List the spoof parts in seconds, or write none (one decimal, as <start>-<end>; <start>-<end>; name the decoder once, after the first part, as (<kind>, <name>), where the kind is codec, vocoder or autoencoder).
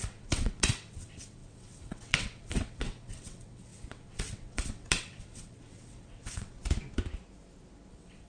0.0-6.6 (vocoder, WaveNeXt); 7.9-8.3